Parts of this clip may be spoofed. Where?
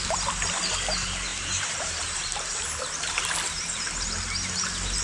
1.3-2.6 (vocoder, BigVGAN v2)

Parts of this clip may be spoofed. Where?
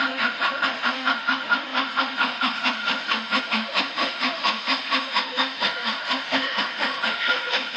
0.0-7.8 (autoencoder, DAC-VAE)